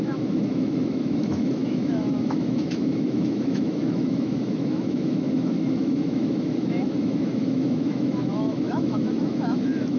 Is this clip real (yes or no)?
no